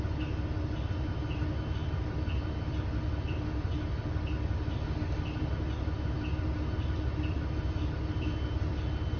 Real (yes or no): yes